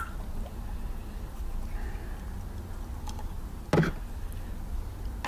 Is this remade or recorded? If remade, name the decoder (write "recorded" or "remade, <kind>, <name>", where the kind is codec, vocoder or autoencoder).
recorded